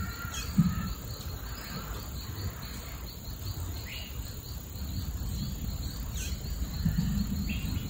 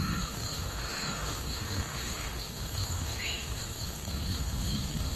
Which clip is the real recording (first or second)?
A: first